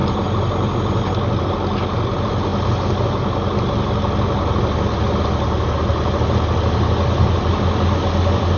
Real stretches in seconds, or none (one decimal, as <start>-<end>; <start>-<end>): 0.0-8.6